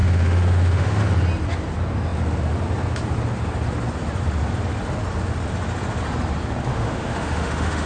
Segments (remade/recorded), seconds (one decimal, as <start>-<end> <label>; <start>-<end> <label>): 0.0-1.0 remade; 1.0-6.7 recorded; 6.7-7.9 remade